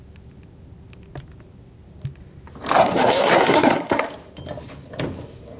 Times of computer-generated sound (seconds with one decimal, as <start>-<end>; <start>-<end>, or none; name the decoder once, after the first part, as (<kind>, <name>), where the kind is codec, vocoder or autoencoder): 2.8-4.0 (codec, SNAC)